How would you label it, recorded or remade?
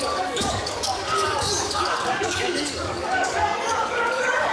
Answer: remade